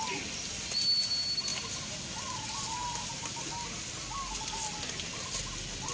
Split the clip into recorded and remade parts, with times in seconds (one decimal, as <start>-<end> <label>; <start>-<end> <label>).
0.0-5.9 recorded